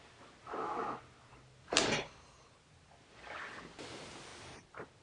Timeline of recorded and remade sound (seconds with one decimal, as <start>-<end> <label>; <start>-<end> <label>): 0.0-5.0 recorded